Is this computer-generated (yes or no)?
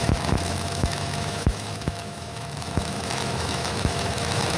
yes